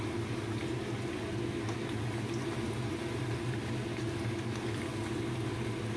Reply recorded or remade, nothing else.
recorded